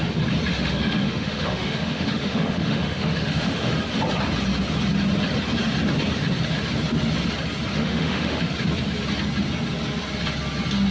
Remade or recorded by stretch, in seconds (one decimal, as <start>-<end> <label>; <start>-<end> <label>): 0.0-0.5 recorded; 0.5-3.7 remade; 3.7-7.7 recorded; 7.7-8.4 remade; 8.4-10.9 recorded

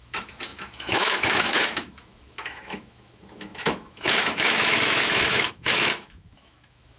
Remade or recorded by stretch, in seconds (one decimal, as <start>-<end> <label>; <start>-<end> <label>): 0.0-7.0 remade

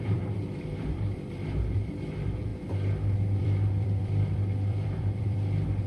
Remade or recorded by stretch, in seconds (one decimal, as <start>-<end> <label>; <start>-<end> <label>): 0.0-2.5 remade; 2.5-3.4 recorded; 3.4-5.9 remade

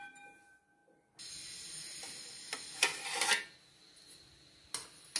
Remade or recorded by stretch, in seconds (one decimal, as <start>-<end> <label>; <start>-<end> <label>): 0.0-5.2 recorded

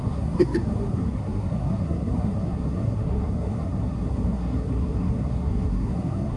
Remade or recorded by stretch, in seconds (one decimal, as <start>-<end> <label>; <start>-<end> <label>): 0.0-6.4 remade

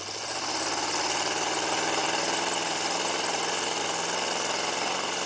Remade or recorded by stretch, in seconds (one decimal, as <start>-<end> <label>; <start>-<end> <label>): 0.0-2.0 recorded; 2.0-3.8 remade; 3.8-5.3 recorded

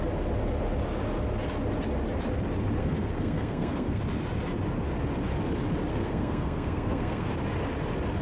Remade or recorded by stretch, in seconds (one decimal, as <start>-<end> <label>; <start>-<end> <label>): 0.0-2.8 recorded; 2.8-4.0 remade; 4.0-5.9 recorded; 5.9-7.3 remade; 7.3-8.2 recorded

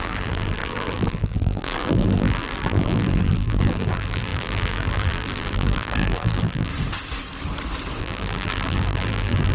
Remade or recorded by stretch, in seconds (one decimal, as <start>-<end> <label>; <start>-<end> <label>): 0.0-6.7 remade; 6.7-8.0 recorded; 8.0-9.5 remade